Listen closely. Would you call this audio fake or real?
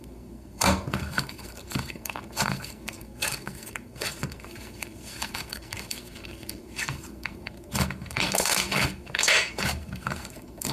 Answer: fake